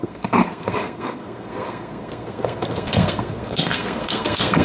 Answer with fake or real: fake